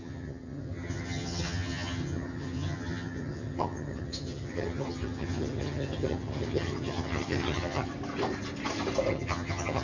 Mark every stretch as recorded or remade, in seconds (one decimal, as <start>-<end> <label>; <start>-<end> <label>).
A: 0.0-7.9 remade; 7.9-9.1 recorded; 9.1-9.8 remade